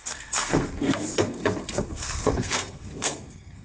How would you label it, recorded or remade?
remade